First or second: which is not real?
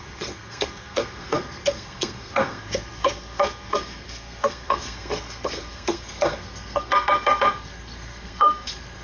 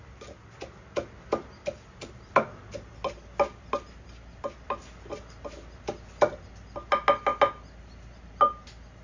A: first